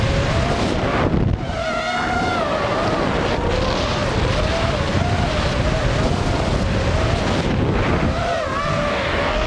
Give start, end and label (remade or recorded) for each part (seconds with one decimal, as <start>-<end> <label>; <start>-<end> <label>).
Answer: 0.0-8.7 recorded; 8.7-9.5 remade